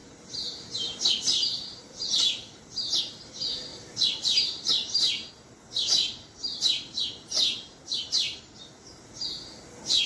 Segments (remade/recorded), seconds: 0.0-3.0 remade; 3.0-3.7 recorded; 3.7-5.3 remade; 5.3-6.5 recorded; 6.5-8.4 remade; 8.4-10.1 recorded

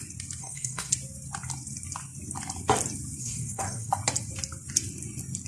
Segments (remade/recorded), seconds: 0.0-0.4 recorded; 0.4-0.9 remade; 0.9-3.2 recorded; 3.2-3.9 remade; 3.9-5.5 recorded